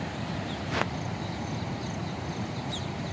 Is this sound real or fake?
real